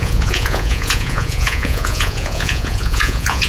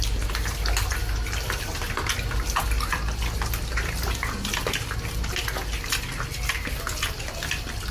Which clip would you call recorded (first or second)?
second